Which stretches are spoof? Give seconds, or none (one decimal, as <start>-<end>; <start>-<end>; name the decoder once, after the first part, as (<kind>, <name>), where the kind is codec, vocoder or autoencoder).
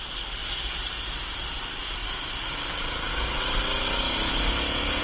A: none